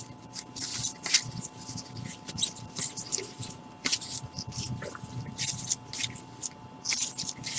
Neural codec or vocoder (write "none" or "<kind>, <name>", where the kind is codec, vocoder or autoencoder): vocoder, BigVGAN v2